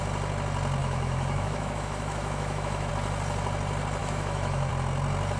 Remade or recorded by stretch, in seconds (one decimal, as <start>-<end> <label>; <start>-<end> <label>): 0.0-0.8 recorded; 0.8-2.9 remade; 2.9-4.0 recorded; 4.0-4.7 remade; 4.7-5.4 recorded